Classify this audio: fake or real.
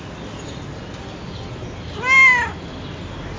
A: real